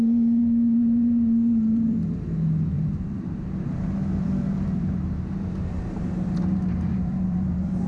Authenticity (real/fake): fake